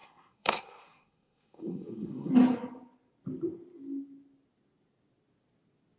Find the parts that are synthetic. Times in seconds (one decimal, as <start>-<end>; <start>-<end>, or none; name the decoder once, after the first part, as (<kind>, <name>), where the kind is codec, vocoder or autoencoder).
0.0-2.3 (codec, SNAC)